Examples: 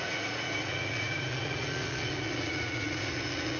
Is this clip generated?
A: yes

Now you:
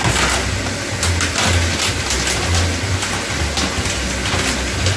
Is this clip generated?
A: no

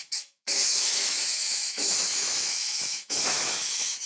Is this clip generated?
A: yes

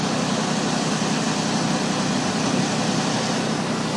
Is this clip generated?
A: no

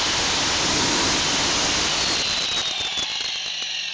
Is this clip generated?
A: no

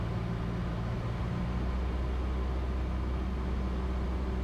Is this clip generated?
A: no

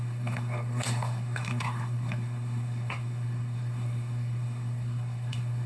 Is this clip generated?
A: yes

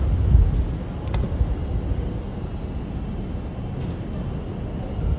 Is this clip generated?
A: no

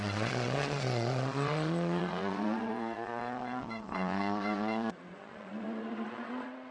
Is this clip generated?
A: yes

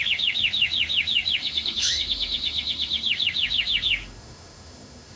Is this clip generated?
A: yes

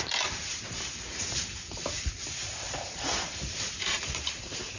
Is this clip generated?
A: yes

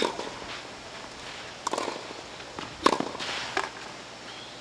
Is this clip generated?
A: no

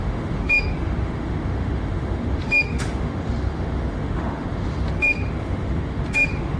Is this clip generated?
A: yes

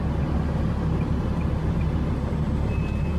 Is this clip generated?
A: no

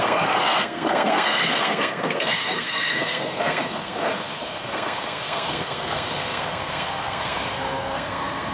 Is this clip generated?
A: yes